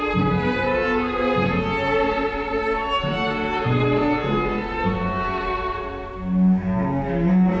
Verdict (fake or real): real